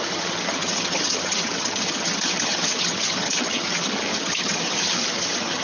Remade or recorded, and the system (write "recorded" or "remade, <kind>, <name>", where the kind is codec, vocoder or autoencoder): remade, vocoder, HiFi-GAN